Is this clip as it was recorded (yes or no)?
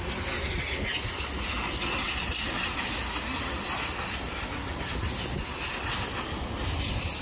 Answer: yes